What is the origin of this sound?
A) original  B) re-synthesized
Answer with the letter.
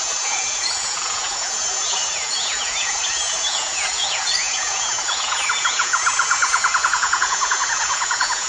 B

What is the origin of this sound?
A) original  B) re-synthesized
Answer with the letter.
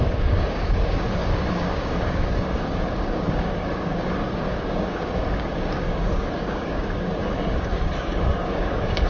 B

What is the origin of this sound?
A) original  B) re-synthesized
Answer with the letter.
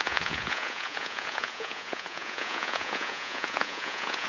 B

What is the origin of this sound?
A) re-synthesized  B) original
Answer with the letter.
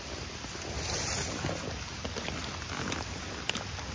B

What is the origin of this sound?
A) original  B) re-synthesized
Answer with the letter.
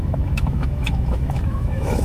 B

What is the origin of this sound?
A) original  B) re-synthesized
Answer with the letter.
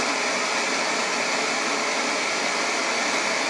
A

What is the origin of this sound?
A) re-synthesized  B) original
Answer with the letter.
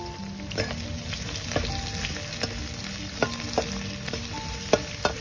B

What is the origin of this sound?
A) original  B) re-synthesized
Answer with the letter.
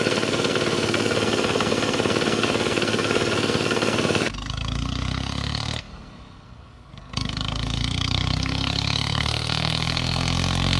B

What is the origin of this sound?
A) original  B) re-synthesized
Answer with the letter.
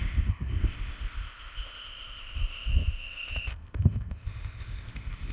B